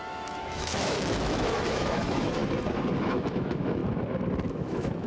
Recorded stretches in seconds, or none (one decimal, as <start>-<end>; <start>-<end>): 2.4-3.0; 3.8-4.5